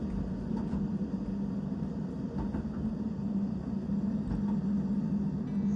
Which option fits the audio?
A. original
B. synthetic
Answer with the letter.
A